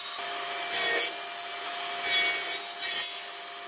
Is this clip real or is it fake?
real